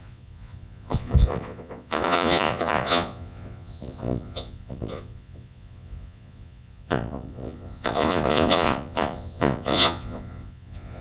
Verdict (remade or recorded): remade